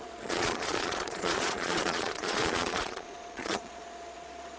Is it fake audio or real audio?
fake